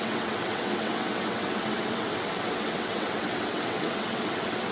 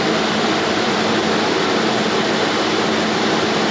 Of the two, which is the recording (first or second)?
second